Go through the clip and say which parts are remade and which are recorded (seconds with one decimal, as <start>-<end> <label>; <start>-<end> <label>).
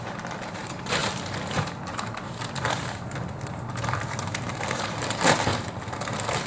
0.0-1.0 remade; 1.0-1.6 recorded; 1.6-2.3 remade; 2.3-3.7 recorded; 3.7-5.5 remade; 5.5-6.5 recorded